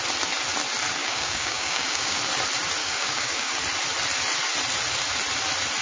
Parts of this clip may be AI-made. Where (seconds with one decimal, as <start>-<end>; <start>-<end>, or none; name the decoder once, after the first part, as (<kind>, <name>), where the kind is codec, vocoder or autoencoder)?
1.0-2.2 (codec, DAC); 2.8-3.6